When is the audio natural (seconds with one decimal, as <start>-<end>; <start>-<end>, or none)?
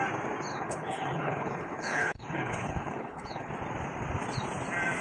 0.0-0.5; 3.5-5.0